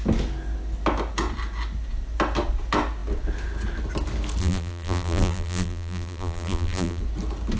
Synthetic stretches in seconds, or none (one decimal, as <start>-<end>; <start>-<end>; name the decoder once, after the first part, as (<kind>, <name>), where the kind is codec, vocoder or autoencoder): 4.4-7.0 (vocoder, BigVGAN v2)